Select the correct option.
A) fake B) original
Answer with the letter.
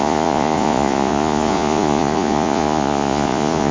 A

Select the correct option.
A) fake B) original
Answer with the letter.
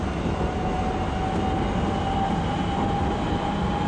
B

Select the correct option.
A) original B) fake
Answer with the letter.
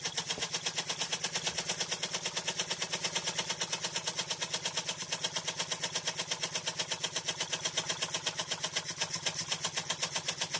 A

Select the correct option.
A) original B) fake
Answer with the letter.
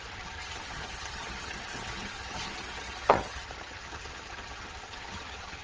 B